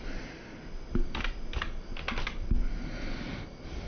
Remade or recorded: recorded